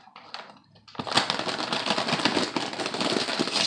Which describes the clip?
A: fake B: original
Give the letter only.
B